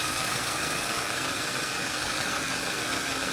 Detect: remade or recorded remade